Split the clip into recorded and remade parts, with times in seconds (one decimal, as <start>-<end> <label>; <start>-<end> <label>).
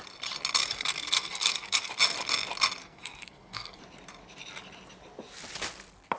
0.0-0.6 recorded; 0.6-1.9 remade; 1.9-2.8 recorded; 2.8-3.8 remade; 3.8-6.2 recorded